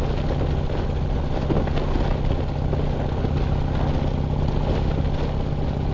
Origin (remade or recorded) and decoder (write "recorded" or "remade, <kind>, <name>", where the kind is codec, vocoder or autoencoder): recorded